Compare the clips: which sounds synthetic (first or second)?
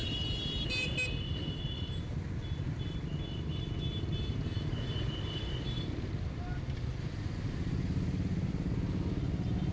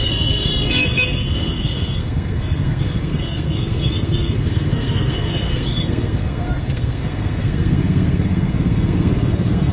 second